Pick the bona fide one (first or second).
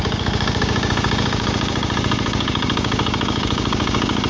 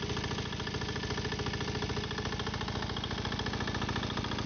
second